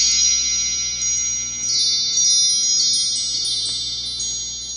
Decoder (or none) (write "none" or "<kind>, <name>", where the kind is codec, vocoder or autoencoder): none